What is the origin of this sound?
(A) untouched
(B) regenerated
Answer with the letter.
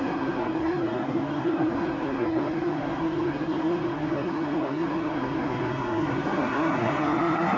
B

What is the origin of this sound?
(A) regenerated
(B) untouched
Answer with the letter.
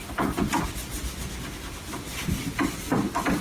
B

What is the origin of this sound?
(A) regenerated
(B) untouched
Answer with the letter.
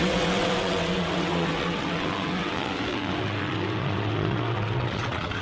A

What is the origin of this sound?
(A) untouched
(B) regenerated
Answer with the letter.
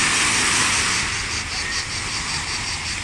A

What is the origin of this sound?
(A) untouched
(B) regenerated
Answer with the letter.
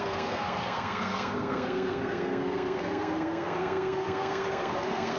B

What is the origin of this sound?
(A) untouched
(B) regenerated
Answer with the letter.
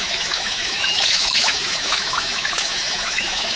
B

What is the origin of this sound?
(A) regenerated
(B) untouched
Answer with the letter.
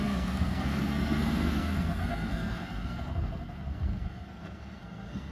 A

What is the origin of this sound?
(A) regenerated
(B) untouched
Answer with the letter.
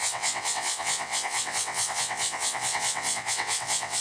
A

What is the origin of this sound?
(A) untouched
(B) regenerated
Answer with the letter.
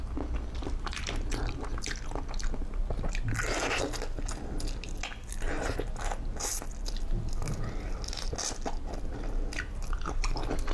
A